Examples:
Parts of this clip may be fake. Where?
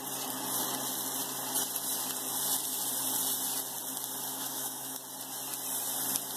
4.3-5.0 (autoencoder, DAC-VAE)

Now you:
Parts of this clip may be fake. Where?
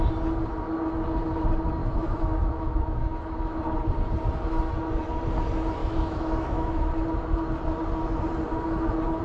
1.8-3.6 (autoencoder, DAC-VAE); 5.8-6.9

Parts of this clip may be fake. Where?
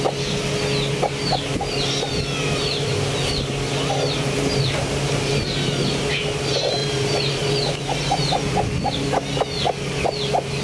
6.8-7.5 (vocoder, BigVGAN v2)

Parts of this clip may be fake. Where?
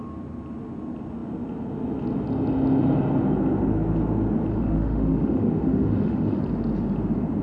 4.5-6.4 (autoencoder, DAC-VAE)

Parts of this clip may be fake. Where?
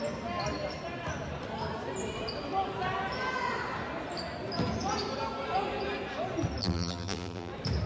6.6-7.5 (vocoder, BigVGAN v2)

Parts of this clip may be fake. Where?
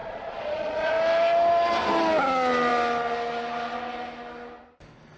0.0-0.9 (vocoder, Vocos)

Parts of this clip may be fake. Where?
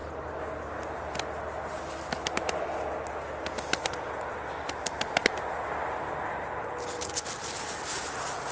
none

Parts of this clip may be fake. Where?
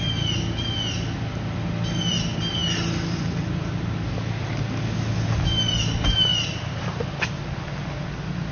none